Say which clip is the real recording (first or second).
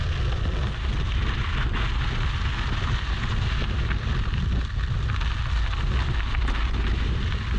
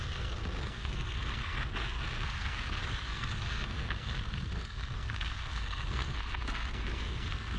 first